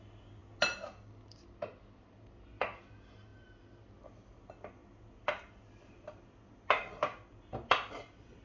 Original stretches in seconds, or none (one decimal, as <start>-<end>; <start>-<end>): 0.0-8.4